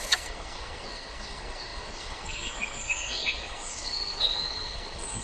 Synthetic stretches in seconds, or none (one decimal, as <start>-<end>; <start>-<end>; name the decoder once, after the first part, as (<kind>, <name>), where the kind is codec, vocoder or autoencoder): 0.0-5.2 (codec, SNAC)